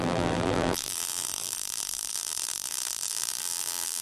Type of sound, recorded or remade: remade